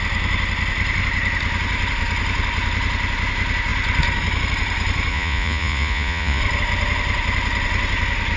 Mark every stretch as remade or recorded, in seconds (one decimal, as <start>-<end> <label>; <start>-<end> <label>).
0.0-5.1 recorded; 5.1-6.4 remade; 6.4-8.4 recorded